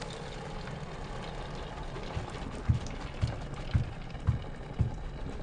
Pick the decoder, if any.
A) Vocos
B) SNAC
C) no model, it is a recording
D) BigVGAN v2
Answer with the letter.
C